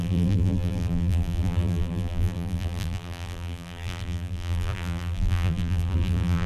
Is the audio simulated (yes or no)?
yes